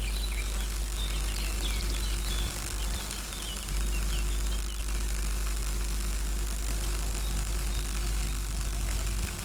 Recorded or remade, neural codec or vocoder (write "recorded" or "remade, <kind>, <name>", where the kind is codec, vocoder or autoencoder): recorded